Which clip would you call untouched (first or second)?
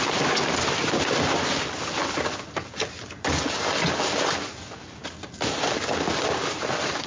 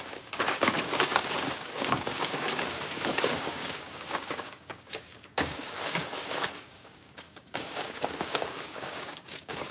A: first